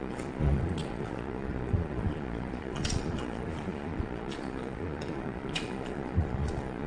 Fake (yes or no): yes